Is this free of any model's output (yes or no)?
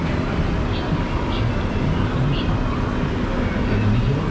yes